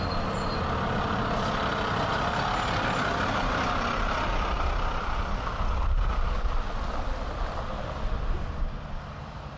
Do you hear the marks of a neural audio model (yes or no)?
no